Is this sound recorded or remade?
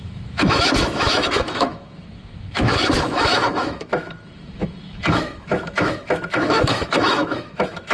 remade